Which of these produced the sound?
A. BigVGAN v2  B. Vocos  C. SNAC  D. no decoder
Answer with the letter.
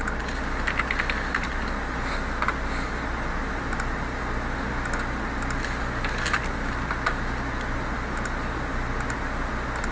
D